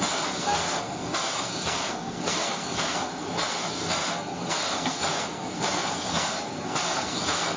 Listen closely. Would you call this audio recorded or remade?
remade